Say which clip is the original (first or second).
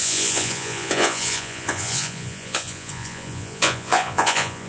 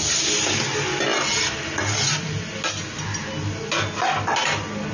second